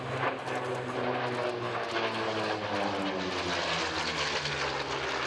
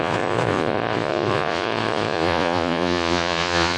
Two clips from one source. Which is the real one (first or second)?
first